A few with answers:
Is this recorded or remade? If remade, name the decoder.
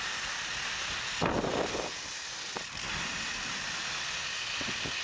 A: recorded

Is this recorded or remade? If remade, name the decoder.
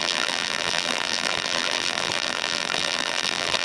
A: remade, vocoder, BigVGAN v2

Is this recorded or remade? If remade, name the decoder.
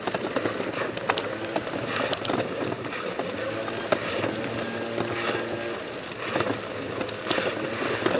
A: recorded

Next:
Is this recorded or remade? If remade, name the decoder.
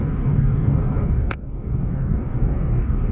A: remade, codec, DAC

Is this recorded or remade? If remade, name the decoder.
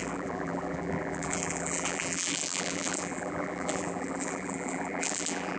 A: remade, vocoder, BigVGAN v2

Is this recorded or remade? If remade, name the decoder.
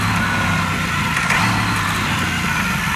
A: recorded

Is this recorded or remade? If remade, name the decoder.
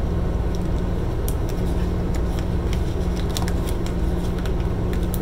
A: recorded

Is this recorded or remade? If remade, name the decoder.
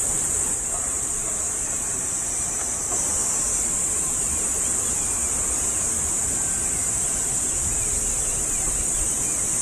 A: remade, vocoder, BigVGAN v2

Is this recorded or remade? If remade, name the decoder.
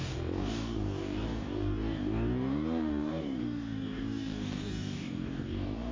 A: remade, codec, DAC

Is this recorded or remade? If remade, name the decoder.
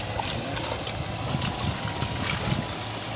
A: recorded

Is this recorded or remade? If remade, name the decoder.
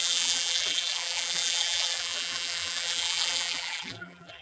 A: remade, vocoder, BigVGAN v2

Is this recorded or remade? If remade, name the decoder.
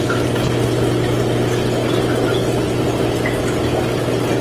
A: recorded